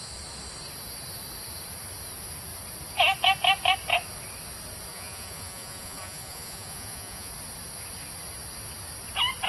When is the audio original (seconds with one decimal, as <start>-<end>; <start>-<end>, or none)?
0.0-4.9; 7.3-9.5